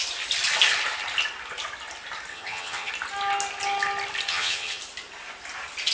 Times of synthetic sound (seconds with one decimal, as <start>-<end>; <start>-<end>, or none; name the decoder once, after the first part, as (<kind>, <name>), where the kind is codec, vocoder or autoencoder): 2.3-2.9 (vocoder, HiFi-GAN); 4.3-4.8